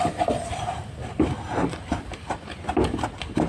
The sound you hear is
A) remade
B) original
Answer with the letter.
B